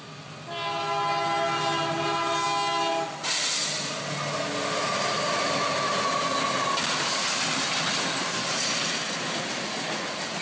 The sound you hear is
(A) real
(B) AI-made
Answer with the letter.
A